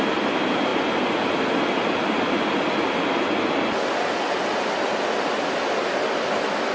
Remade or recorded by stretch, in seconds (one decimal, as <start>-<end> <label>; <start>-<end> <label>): 0.0-6.7 recorded